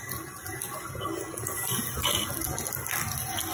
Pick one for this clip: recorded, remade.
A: recorded